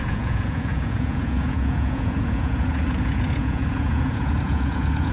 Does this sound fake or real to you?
fake